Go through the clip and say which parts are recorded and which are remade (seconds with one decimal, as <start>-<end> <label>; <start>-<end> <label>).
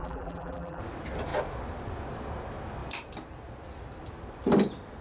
0.0-0.8 remade; 0.8-5.0 recorded